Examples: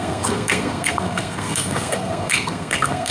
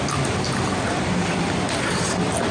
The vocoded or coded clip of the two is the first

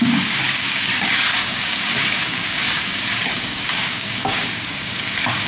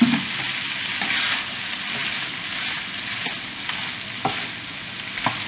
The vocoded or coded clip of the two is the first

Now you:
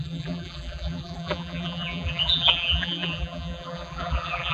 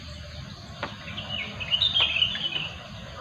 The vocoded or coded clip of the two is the first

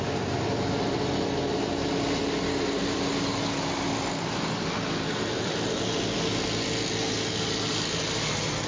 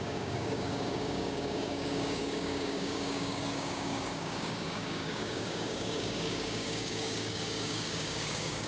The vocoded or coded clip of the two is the second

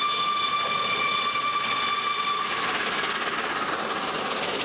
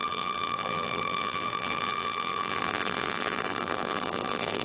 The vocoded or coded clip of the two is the second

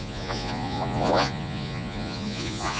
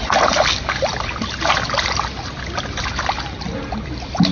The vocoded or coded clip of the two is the first